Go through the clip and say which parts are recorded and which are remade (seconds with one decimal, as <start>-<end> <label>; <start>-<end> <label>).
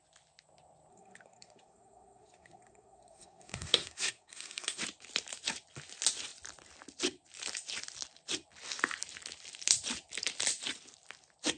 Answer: 0.0-0.9 recorded; 0.9-4.8 remade; 4.8-11.6 recorded